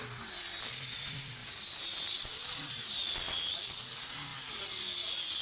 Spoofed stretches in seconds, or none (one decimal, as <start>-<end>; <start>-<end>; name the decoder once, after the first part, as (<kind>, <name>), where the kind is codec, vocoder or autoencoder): 1.4-3.1 (vocoder, BigVGAN v2)